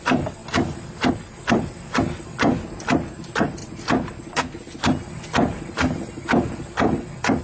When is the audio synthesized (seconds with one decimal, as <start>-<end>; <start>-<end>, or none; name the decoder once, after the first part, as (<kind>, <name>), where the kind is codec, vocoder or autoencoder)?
0.0-0.4 (vocoder, BigVGAN v2); 1.1-3.6; 5.6-7.4

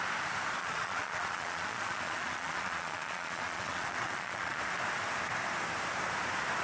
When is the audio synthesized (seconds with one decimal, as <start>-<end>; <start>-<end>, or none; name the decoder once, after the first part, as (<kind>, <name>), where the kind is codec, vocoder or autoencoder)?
0.6-4.6 (vocoder, Vocos)

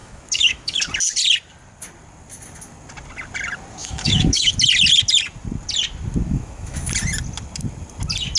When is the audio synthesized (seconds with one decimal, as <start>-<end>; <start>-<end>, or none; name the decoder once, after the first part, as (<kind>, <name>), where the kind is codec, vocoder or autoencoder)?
0.0-0.8 (autoencoder, DAC-VAE); 3.8-4.5; 6.2-6.9

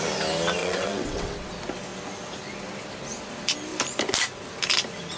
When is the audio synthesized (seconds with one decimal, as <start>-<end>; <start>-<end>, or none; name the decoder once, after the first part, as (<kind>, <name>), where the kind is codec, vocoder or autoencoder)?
0.6-1.5 (vocoder, WaveNeXt)

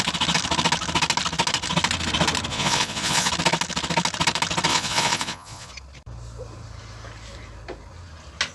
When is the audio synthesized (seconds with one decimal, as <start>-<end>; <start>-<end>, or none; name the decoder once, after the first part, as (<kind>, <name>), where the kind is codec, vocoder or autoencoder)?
2.5-3.3 (vocoder, Vocos); 4.7-5.7